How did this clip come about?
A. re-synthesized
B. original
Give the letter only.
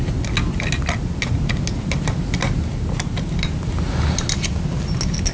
B